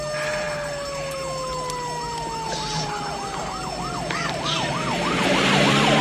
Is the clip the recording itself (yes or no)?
yes